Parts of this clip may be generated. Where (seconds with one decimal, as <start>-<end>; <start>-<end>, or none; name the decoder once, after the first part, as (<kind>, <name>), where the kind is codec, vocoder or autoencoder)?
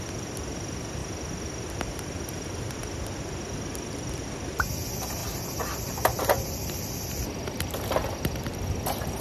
5.2-6.9 (vocoder, BigVGAN v2)